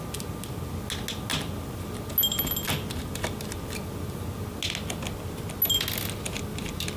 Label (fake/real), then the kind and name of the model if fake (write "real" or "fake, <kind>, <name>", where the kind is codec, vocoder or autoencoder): real